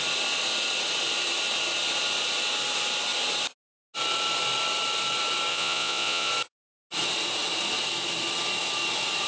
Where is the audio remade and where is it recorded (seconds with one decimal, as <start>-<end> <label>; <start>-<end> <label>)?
0.0-5.5 recorded; 5.5-6.3 remade; 6.3-9.3 recorded